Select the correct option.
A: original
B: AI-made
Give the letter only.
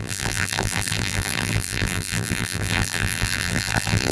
B